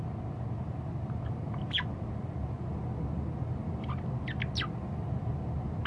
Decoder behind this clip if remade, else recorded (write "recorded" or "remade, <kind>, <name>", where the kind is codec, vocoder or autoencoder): recorded